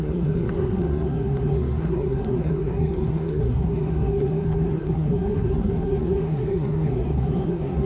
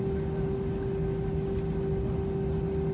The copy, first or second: first